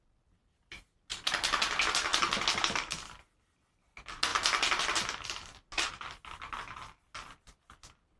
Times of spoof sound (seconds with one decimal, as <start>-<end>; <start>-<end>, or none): none